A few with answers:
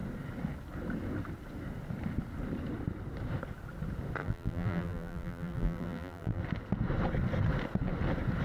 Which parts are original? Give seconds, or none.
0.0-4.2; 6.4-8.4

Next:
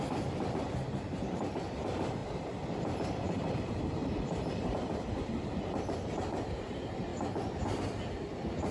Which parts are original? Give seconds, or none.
2.2-2.8; 7.1-7.8

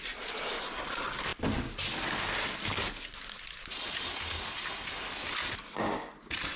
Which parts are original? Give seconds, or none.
0.0-6.6

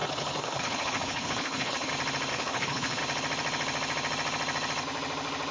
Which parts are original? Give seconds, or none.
1.9-2.3; 3.0-5.5

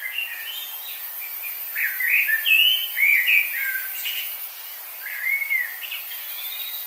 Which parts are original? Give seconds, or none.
4.8-6.1